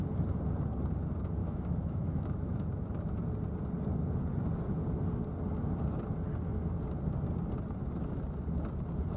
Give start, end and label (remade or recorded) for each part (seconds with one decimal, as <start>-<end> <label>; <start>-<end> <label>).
0.0-1.4 recorded; 1.4-3.0 remade; 3.0-9.2 recorded